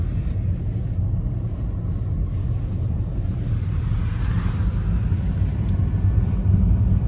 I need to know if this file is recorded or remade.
recorded